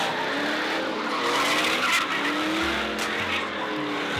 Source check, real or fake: real